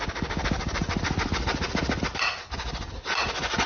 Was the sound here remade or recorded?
recorded